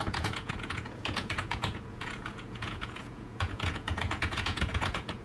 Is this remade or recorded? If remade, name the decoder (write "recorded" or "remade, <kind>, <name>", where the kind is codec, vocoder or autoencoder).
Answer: remade, vocoder, Vocos